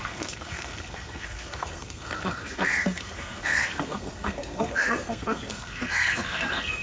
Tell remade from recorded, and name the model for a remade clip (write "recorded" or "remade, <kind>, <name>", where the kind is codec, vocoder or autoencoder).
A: remade, codec, SNAC